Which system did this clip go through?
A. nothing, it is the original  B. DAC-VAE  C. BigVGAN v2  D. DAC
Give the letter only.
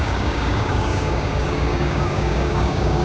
D